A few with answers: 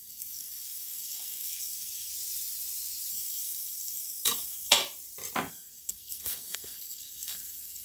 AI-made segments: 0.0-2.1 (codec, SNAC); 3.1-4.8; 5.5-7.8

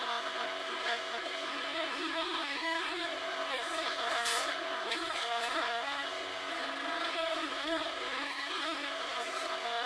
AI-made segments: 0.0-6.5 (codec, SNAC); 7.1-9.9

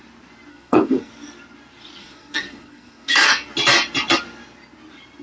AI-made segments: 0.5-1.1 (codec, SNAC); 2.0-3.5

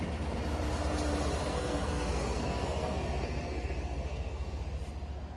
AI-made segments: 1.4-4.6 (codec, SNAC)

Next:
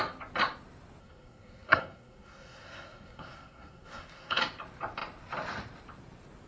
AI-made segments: 1.0-4.4 (codec, SNAC)